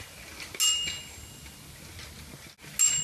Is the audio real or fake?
real